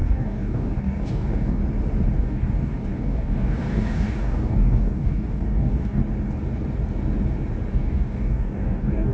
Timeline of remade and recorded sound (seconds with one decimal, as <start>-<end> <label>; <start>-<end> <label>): 0.0-1.6 remade; 1.6-2.2 recorded; 2.2-6.0 remade; 6.0-7.7 recorded; 7.7-9.1 remade